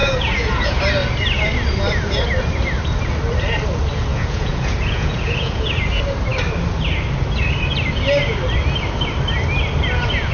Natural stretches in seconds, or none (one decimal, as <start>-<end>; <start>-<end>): 0.8-4.1; 5.8-10.3